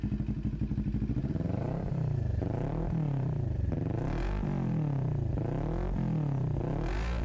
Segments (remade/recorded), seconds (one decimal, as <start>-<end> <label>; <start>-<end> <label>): 0.0-1.2 recorded; 1.2-3.8 remade; 3.8-7.2 recorded